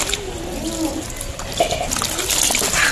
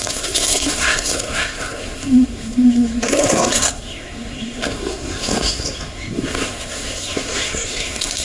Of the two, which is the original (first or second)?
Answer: first